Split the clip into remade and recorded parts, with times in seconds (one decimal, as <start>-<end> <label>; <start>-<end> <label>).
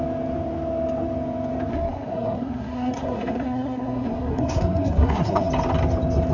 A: 0.0-1.7 recorded; 1.7-5.5 remade; 5.5-6.3 recorded